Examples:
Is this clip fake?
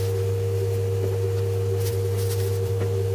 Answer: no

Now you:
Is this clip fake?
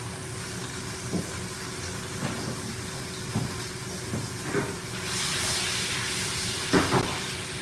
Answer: no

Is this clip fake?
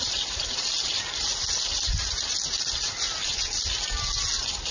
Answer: no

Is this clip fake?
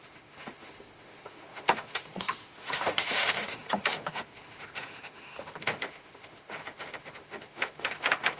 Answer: yes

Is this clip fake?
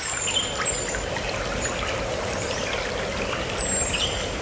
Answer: no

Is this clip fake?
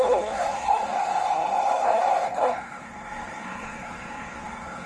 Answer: yes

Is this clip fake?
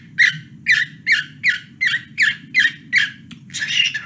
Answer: no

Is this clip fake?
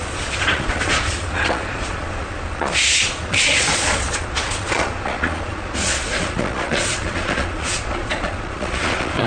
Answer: yes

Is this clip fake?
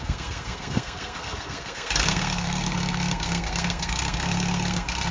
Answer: yes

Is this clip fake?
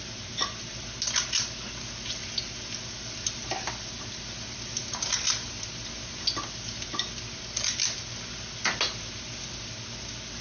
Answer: no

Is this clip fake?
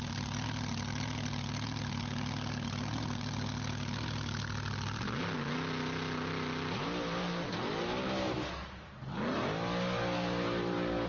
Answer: no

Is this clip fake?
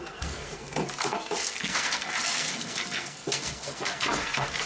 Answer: yes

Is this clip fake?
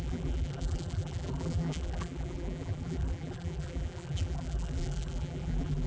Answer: yes